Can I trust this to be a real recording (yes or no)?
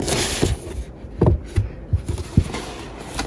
yes